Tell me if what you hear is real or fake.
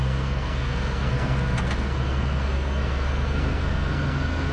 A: fake